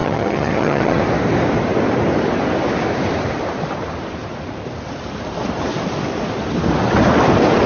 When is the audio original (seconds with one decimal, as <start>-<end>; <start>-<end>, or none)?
1.0-7.7